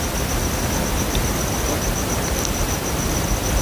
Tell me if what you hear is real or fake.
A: real